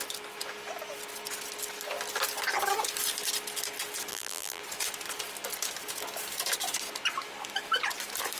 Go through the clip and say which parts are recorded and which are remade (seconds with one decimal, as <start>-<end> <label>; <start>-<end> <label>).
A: 0.0-4.1 recorded; 4.1-4.6 remade; 4.6-8.4 recorded